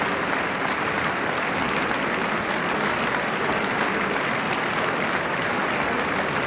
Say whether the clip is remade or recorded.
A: recorded